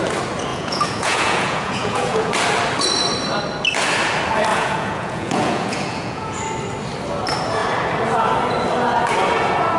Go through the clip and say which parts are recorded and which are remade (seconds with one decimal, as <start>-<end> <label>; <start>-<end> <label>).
0.0-0.5 recorded; 0.5-2.3 remade; 2.3-4.5 recorded; 4.5-6.4 remade; 6.4-9.8 recorded